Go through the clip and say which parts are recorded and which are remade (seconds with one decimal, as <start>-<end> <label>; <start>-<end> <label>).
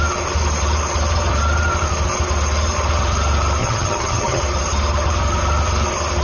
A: 0.0-3.6 recorded; 3.6-4.4 remade; 4.4-6.2 recorded